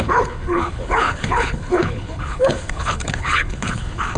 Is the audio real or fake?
fake